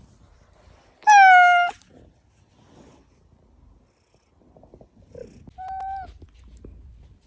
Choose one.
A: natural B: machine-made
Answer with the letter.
A